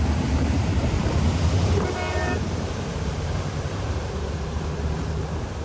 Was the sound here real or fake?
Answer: fake